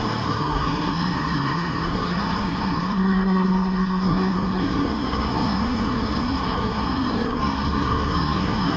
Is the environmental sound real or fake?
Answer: fake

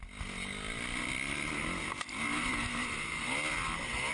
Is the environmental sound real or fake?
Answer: real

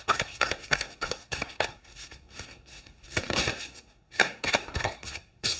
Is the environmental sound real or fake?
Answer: fake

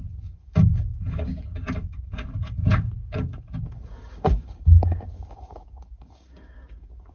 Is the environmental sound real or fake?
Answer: fake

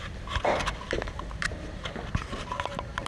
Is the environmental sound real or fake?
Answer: fake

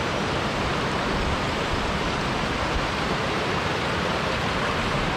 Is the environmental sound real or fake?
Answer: fake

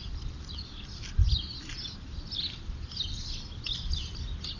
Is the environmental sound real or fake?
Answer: real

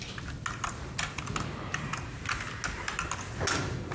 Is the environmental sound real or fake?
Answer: real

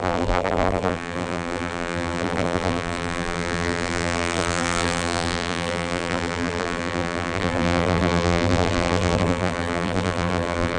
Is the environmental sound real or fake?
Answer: fake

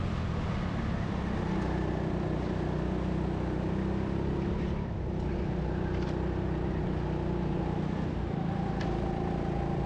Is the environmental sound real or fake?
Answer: real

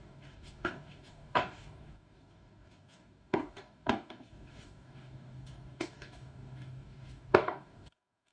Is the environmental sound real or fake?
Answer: fake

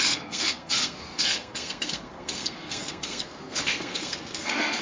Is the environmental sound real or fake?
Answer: fake